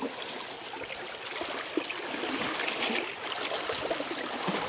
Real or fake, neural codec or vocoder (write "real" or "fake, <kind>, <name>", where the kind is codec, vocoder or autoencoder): real